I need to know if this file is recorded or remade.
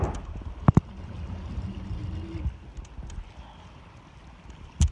recorded